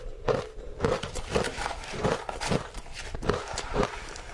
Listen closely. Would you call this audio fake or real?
fake